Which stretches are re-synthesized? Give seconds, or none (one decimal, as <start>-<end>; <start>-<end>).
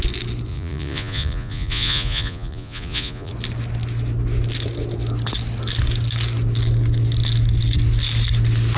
0.5-3.3